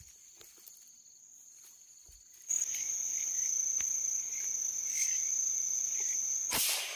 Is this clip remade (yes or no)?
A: no